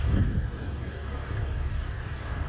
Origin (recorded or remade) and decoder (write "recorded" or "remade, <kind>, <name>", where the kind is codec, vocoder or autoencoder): remade, codec, DAC